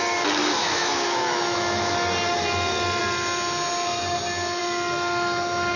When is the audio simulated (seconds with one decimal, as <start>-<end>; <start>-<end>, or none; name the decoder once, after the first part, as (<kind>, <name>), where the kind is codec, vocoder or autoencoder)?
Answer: 0.4-1.9 (autoencoder, DAC-VAE)